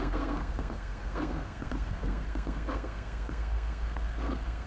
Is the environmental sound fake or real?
fake